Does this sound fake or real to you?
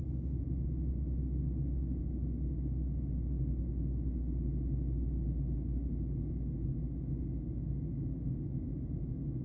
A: real